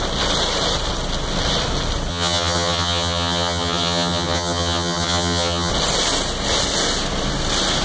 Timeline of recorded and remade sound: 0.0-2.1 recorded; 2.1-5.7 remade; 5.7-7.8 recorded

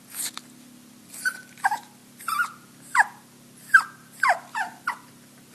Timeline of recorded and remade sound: 0.0-5.5 recorded

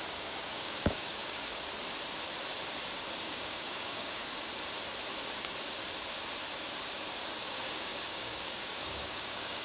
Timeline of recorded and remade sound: 0.0-1.5 remade; 1.5-3.3 recorded; 3.3-4.2 remade; 4.2-7.4 recorded; 7.4-9.6 remade